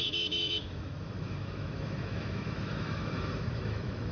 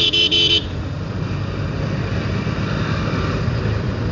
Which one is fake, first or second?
first